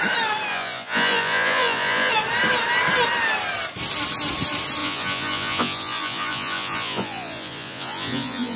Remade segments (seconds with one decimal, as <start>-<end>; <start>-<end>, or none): 0.5-2.1; 4.8-8.6